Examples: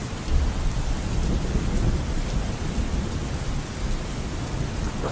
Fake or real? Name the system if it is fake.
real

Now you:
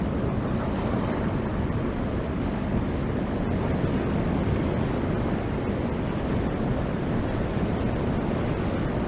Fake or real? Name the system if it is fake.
real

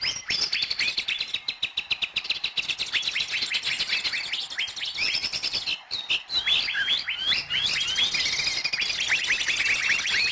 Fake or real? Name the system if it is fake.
real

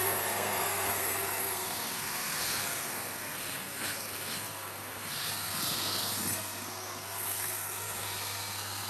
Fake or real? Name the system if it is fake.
fake, codec, SNAC